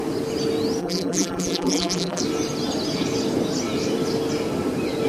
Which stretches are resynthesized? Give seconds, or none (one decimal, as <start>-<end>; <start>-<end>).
0.8-2.2